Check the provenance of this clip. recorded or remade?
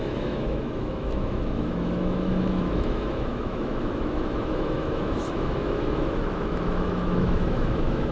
remade